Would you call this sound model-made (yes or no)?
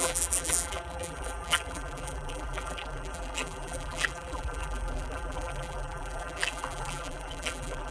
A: yes